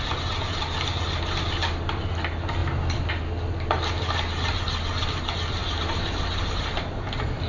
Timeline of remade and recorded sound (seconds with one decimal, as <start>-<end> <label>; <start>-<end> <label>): 0.0-2.6 recorded; 2.6-3.1 remade; 3.1-5.6 recorded; 5.6-7.5 remade